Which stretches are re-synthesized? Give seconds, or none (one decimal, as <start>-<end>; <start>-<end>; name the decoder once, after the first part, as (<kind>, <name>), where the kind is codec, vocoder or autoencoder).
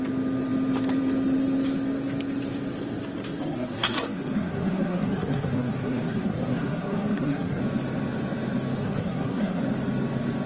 3.4-7.6 (codec, SNAC); 8.8-9.6